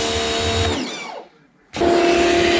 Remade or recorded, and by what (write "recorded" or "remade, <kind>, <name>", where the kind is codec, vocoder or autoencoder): recorded